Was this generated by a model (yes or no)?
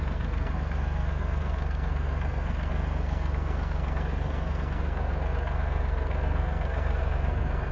yes